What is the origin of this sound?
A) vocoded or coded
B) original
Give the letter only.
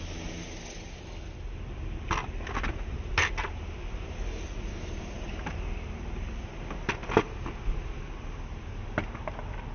B